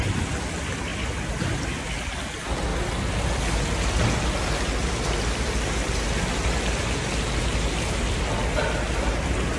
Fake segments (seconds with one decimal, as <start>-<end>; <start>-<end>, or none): none